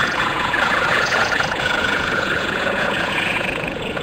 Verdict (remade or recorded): remade